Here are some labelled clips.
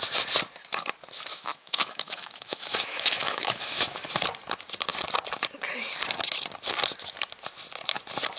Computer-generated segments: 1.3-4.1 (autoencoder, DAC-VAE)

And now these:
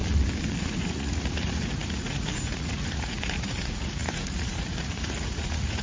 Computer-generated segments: 0.6-5.8 (vocoder, Vocos)